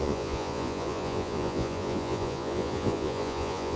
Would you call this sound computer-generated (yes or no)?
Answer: yes